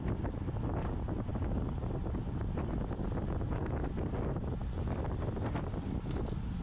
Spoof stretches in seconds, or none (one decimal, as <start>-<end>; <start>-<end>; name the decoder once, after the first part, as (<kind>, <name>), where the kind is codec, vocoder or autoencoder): none